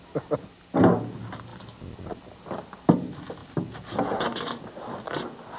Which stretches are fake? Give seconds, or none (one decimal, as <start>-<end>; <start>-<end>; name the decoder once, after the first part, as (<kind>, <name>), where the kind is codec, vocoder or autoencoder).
none